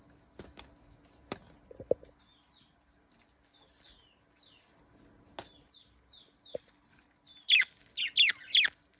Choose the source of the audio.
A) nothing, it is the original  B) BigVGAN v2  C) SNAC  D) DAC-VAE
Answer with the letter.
A